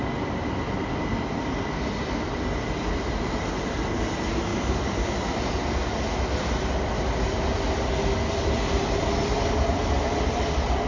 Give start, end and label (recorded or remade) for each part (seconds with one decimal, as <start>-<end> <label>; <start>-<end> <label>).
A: 0.0-4.5 recorded; 4.5-5.3 remade; 5.3-10.9 recorded